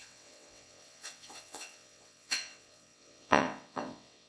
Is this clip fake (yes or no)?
yes